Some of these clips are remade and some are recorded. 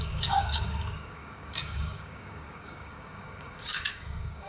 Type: remade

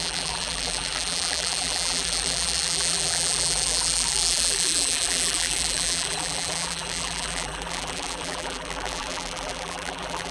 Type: remade